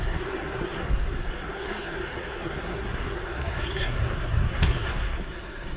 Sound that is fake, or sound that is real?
fake